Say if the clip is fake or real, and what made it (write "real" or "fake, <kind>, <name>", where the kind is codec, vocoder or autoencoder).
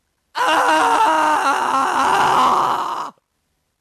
real